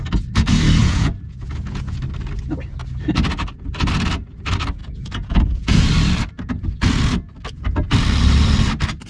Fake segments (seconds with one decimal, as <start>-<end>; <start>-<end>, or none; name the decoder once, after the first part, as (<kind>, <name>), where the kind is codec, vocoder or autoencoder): 0.8-2.0 (vocoder, Vocos); 4.8-5.9